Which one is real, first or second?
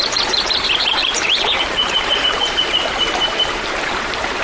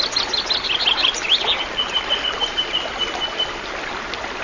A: second